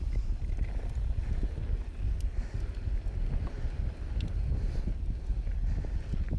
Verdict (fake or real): real